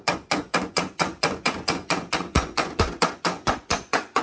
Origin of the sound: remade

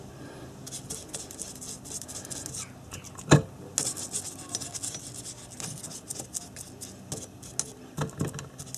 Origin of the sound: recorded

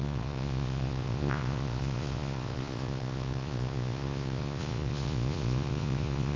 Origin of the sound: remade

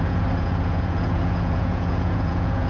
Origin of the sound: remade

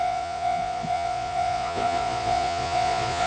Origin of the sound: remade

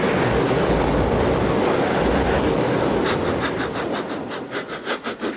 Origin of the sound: recorded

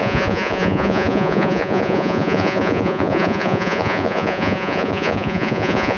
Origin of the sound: remade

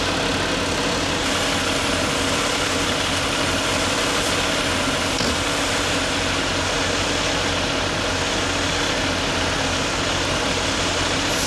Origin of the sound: recorded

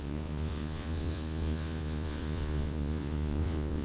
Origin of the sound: remade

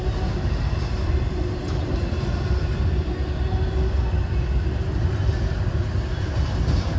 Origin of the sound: recorded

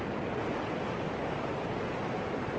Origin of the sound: recorded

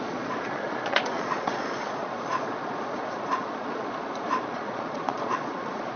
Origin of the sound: remade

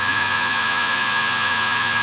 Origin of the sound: remade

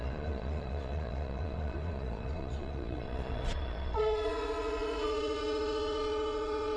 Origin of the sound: remade